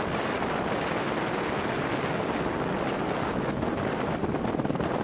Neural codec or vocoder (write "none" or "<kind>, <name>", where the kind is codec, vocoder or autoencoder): none